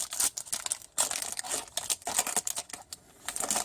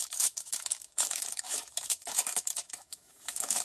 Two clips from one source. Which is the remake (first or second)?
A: second